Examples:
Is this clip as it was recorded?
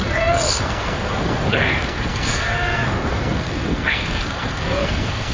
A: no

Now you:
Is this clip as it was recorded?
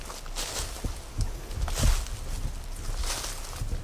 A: yes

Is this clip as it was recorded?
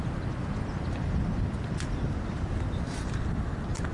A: yes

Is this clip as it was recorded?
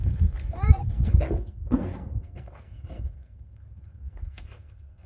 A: no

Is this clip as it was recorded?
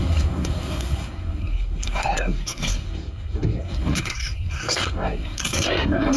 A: no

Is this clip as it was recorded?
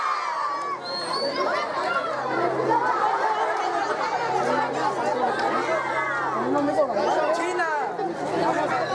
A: yes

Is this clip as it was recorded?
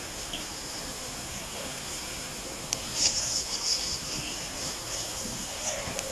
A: no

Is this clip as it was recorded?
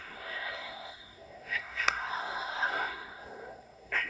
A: no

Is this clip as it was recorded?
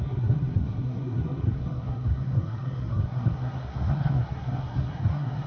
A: no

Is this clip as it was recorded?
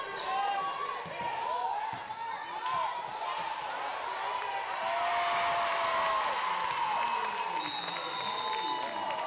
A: yes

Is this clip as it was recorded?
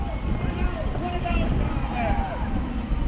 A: yes